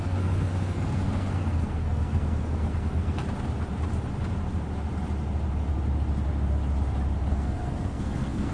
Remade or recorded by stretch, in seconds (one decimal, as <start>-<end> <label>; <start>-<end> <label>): 0.0-3.2 remade; 3.2-7.3 recorded; 7.3-8.5 remade